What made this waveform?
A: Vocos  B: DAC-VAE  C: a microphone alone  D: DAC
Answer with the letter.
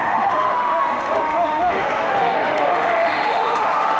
B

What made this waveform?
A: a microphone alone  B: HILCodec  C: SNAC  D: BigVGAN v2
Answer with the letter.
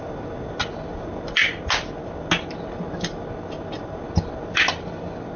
A